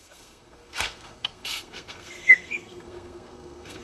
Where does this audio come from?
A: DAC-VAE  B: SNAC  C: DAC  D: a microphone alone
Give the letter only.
B